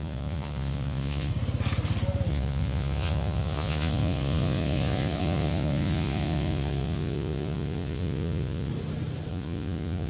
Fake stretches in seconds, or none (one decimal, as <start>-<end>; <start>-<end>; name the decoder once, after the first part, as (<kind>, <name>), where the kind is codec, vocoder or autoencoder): 0.0-1.3 (vocoder, Vocos); 2.3-8.7; 9.3-10.1